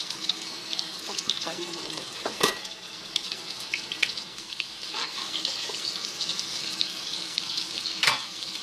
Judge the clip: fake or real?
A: fake